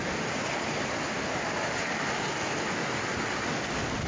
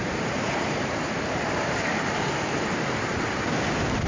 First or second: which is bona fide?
first